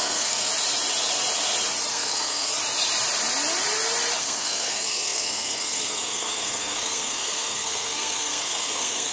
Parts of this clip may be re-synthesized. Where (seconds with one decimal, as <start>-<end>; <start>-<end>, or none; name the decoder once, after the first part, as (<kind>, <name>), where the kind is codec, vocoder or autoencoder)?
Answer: 0.0-0.5 (codec, SNAC); 1.9-2.5; 4.2-9.1